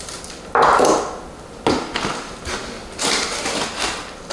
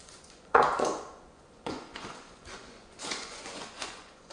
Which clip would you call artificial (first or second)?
second